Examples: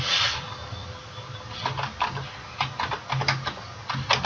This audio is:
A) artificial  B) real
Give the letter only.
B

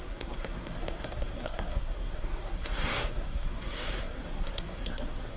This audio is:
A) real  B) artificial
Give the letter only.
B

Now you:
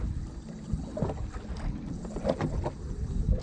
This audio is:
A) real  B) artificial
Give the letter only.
A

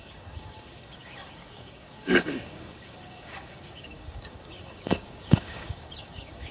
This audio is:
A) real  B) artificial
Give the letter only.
B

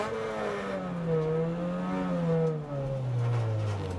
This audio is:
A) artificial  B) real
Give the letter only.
B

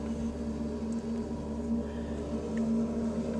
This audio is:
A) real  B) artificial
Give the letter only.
A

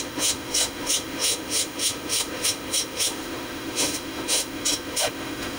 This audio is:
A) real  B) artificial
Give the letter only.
B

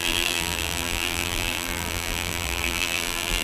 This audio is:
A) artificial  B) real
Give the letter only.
A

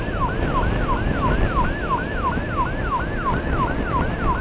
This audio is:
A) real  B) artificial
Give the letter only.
A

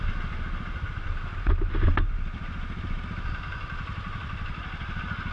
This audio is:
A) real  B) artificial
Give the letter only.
A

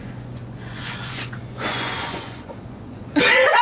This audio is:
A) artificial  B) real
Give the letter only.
A